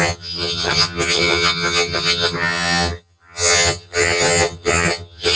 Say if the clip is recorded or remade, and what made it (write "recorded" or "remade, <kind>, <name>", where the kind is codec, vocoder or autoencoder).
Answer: remade, vocoder, HiFi-GAN